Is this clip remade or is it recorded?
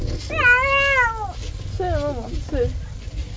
recorded